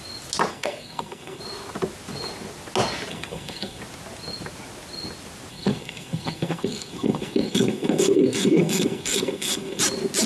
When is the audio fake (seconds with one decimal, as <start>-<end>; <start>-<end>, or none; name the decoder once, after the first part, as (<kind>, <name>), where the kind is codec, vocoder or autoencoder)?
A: 0.5-1.4 (codec, SNAC); 3.1-3.8; 5.5-9.8